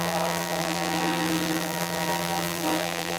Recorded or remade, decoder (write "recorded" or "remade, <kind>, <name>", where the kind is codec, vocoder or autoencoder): remade, vocoder, BigVGAN v2